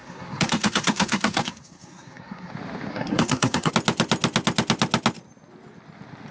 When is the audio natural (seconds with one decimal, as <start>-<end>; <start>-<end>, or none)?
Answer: 2.5-2.9; 3.7-6.3

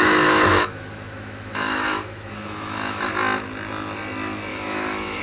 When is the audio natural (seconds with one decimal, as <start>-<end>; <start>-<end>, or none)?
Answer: 3.1-4.5

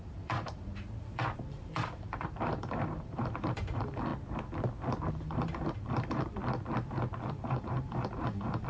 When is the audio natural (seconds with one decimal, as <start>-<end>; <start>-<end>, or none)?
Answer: 4.1-5.1; 6.4-7.3

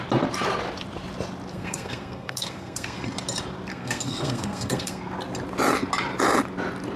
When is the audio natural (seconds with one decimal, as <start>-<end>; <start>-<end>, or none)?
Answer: 0.0-1.5; 3.0-3.7; 5.0-7.0

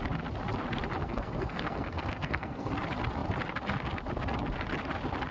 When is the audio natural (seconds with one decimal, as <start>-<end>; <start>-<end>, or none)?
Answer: 0.0-1.0; 2.7-5.3